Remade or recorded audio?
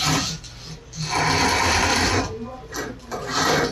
recorded